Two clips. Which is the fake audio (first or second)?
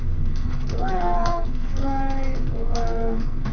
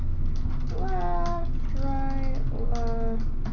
first